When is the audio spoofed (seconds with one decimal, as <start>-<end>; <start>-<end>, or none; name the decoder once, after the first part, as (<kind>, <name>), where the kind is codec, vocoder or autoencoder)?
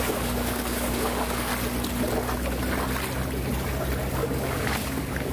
0.0-1.5 (codec, DAC); 4.1-5.3